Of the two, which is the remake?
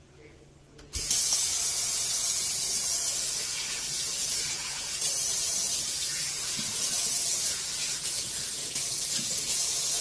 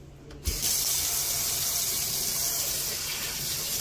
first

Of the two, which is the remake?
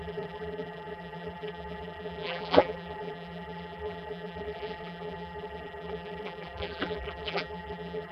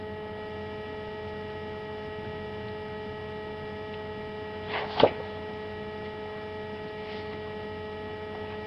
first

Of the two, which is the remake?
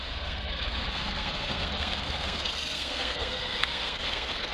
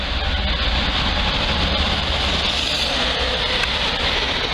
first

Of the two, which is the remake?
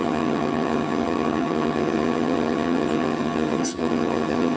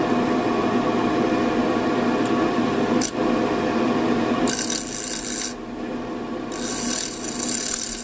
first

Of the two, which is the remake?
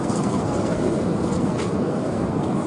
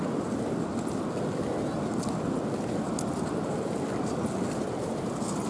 first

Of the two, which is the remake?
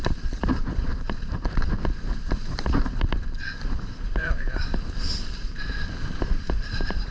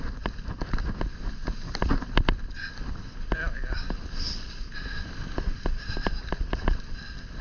first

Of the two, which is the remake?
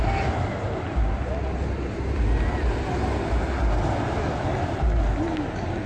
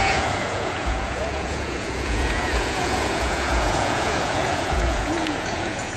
second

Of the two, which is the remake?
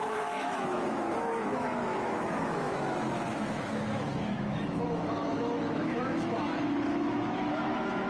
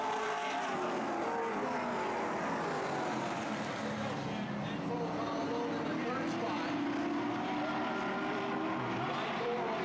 first